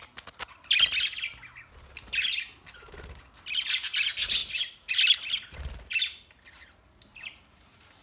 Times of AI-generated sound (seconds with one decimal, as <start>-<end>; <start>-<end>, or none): 4.4-4.9